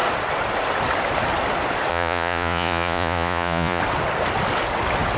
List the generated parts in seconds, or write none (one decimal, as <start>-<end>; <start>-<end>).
1.9-3.8